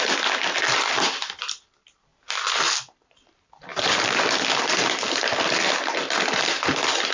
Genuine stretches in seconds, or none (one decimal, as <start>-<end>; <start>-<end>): 2.1-2.8; 3.7-6.6